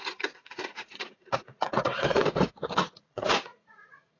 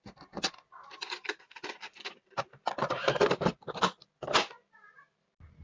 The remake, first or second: first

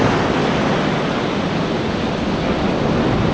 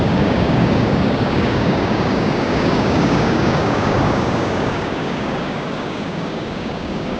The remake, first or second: second